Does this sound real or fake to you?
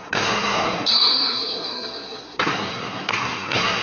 fake